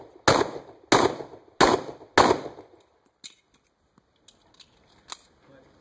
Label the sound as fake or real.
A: real